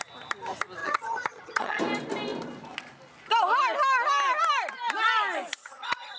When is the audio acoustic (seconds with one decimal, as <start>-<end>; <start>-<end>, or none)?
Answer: 0.0-0.8; 1.8-5.6